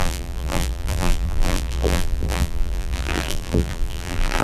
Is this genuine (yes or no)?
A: no